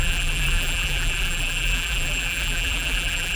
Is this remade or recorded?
remade